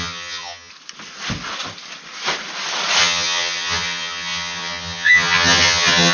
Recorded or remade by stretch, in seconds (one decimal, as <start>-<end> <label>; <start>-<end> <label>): 0.0-0.7 remade; 0.7-3.0 recorded; 3.0-6.1 remade